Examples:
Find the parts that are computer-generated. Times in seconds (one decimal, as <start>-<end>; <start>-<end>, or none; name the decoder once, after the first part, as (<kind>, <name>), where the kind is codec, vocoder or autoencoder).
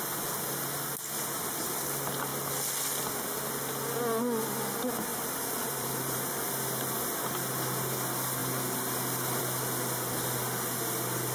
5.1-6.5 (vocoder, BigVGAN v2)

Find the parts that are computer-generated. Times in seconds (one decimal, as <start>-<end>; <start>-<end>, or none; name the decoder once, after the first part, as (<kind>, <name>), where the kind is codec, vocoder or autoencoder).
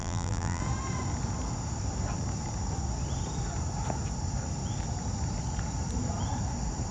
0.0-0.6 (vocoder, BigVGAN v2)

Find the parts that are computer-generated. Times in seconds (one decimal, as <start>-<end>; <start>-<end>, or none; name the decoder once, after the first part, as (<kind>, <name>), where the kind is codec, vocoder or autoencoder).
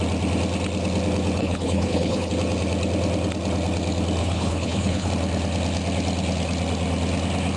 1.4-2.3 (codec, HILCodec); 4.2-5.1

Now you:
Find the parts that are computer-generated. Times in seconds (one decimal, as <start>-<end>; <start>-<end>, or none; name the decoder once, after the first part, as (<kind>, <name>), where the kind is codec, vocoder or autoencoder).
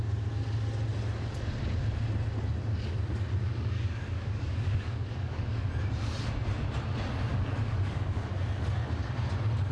3.4-5.7 (codec, DAC); 7.3-8.3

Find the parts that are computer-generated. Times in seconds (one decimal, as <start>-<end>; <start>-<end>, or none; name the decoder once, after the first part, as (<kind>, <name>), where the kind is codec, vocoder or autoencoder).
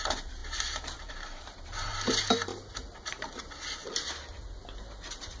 0.0-2.5 (vocoder, BigVGAN v2); 3.4-3.8; 4.9-5.4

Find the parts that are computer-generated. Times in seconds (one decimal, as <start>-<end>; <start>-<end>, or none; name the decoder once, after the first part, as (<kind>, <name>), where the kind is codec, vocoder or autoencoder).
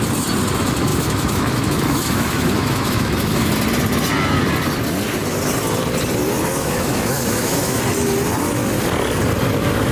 0.9-3.5 (autoencoder, DAC-VAE); 6.6-7.8